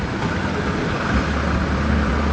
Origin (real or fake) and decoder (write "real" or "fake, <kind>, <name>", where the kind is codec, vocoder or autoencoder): real